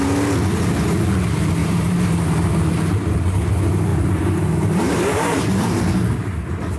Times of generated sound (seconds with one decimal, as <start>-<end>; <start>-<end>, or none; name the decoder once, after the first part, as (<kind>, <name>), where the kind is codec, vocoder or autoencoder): 1.6-2.5 (vocoder, BigVGAN v2); 3.9-5.4